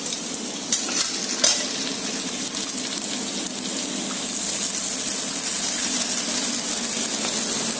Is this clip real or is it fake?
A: real